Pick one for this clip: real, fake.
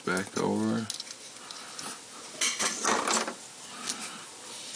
real